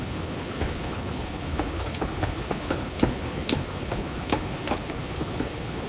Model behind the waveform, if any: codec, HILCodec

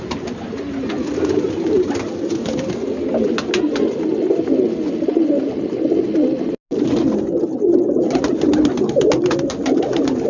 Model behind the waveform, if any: none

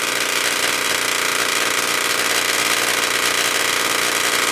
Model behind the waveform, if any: none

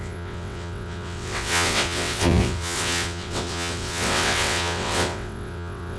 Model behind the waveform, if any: vocoder, WaveNeXt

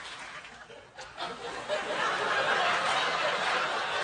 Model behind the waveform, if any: none